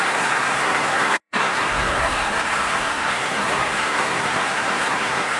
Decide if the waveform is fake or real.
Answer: fake